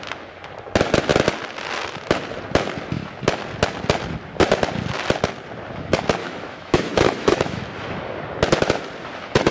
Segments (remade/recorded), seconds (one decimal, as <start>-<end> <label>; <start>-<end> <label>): 0.0-6.2 recorded; 6.2-7.6 remade; 7.6-9.5 recorded